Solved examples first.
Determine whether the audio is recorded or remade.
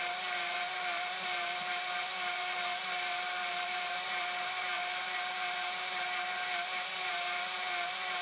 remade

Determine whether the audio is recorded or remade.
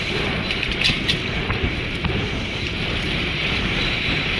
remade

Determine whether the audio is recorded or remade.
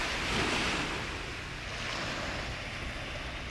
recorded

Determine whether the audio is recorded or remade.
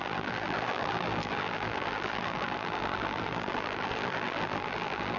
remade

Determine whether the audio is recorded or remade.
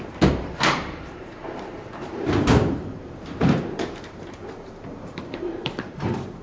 remade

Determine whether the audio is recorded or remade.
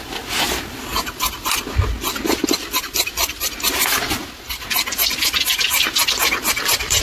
recorded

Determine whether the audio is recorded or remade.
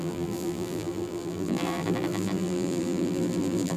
remade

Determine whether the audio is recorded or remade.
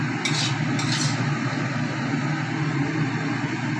recorded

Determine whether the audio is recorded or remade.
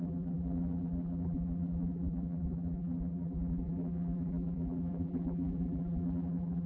remade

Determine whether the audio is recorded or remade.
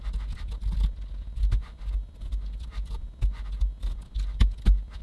recorded